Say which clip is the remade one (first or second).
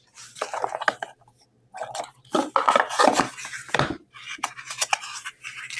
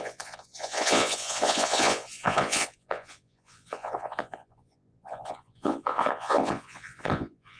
second